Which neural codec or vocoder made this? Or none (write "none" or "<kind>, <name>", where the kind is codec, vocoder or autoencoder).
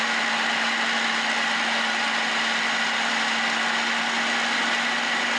none